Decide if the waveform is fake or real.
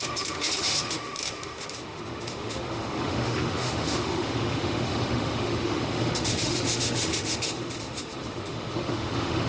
fake